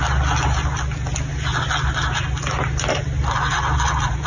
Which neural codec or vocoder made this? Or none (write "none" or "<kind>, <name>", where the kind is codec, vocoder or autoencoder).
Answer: none